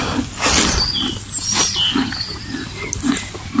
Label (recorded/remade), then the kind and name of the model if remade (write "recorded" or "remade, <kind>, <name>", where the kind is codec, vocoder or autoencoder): recorded